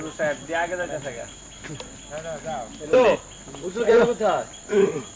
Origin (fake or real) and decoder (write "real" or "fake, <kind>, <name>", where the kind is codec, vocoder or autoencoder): real